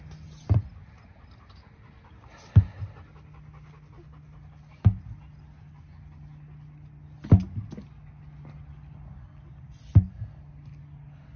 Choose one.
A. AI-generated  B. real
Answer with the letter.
B